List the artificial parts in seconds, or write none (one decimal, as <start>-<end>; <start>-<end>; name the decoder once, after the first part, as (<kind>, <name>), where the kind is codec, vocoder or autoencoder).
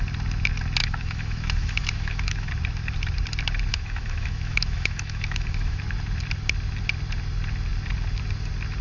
0.8-2.5 (autoencoder, DAC-VAE); 3.7-5.8